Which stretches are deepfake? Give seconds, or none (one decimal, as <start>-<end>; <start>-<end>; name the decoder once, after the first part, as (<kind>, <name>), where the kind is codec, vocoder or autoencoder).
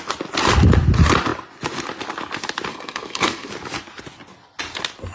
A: 2.7-3.5 (codec, SNAC)